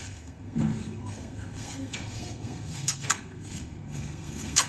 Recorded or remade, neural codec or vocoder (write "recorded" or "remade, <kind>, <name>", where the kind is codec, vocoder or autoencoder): remade, codec, SNAC